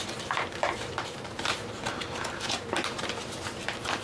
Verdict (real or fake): fake